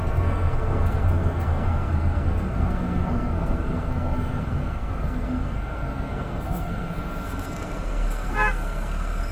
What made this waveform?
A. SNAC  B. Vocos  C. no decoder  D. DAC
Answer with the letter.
A